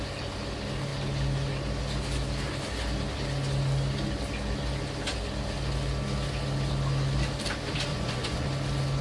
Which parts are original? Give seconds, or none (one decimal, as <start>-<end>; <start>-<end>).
0.0-7.9; 8.5-9.0